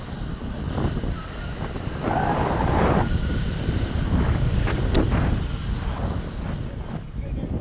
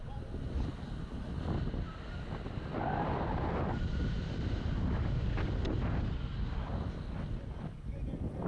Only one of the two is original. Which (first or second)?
second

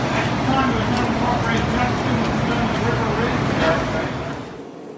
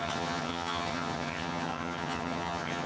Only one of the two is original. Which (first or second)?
first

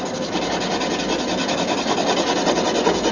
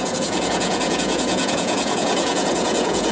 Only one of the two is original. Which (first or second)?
first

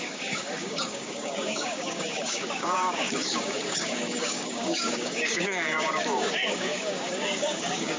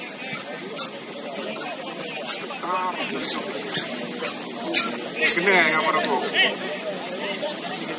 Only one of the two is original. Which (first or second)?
second